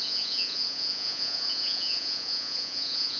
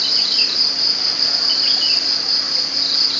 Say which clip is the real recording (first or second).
second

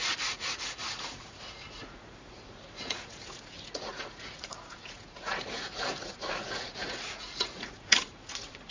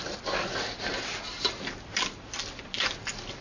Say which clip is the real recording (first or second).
second